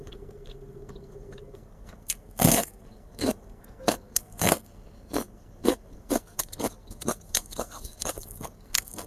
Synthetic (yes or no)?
yes